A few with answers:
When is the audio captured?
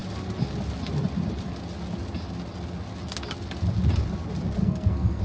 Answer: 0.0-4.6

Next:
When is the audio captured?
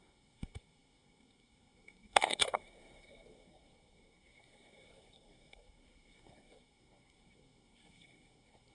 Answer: none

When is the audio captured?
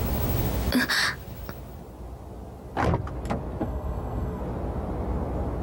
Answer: 0.0-3.6; 4.4-5.6